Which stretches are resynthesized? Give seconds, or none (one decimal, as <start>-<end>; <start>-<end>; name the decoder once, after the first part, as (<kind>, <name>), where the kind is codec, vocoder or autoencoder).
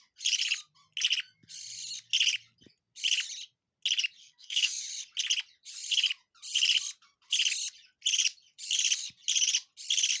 4.2-4.8 (codec, SNAC)